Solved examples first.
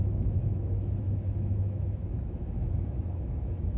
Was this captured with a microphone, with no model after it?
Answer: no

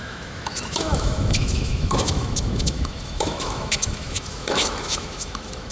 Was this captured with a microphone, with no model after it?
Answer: no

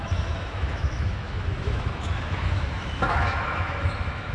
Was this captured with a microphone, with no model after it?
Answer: no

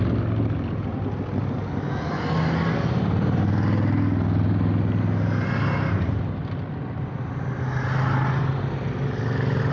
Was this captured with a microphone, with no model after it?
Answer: yes